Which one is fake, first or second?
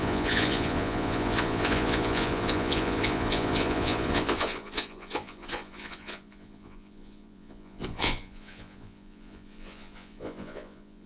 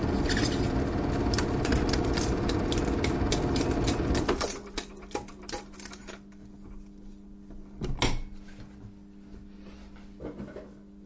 first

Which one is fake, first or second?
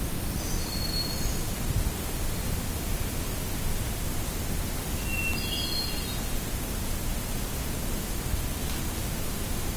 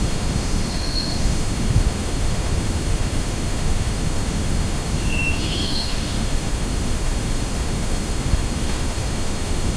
second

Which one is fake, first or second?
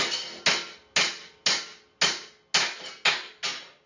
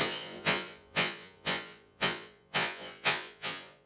second